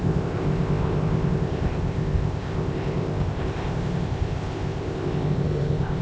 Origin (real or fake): fake